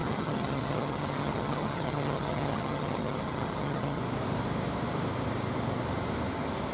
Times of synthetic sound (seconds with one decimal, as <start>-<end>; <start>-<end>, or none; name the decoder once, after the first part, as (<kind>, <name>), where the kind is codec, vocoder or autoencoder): 0.0-4.0 (vocoder, HiFi-GAN)